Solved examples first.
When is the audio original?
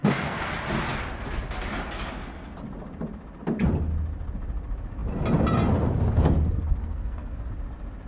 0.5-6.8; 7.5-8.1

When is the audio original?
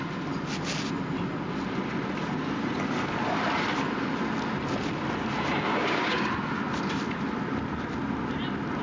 0.0-5.7; 6.3-8.8